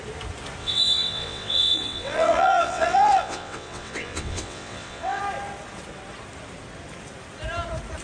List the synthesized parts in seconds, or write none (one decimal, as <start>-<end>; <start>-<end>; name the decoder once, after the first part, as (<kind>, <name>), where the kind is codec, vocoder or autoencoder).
0.6-5.2 (vocoder, WaveNeXt)